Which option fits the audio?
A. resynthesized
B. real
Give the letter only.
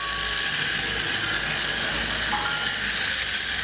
B